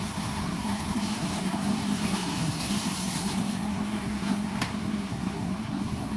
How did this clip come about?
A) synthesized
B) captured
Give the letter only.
A